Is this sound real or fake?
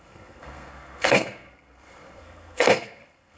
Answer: fake